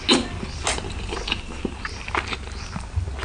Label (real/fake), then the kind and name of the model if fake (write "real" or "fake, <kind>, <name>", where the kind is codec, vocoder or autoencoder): real